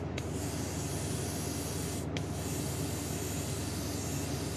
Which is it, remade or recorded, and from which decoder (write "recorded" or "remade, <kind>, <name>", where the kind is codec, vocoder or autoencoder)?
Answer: recorded